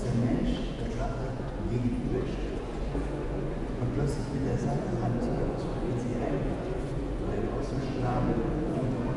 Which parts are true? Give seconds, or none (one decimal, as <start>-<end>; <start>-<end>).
none